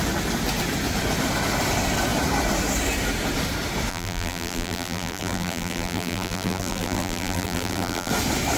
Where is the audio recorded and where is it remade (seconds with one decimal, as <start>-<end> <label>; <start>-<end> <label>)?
0.0-3.9 recorded; 3.9-8.1 remade; 8.1-8.6 recorded

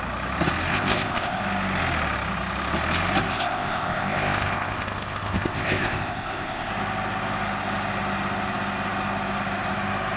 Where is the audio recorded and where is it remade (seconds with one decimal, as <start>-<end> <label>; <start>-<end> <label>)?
0.0-0.7 recorded; 0.7-1.4 remade; 1.4-3.3 recorded; 3.3-6.7 remade; 6.7-10.2 recorded